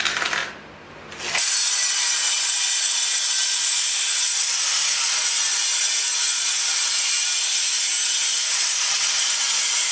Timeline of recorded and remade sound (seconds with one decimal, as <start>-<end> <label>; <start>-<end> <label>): 0.0-9.9 recorded